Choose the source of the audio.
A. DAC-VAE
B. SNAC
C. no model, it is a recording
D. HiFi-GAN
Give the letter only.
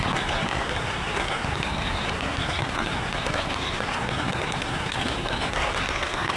B